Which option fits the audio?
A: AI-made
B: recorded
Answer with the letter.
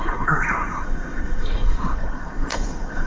A